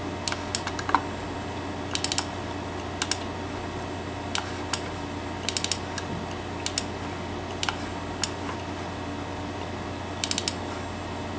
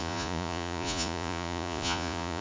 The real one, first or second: first